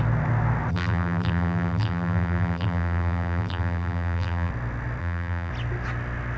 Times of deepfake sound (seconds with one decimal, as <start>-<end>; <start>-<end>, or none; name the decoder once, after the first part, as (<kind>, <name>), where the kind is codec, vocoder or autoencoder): 0.7-4.5 (vocoder, BigVGAN v2); 5.0-5.5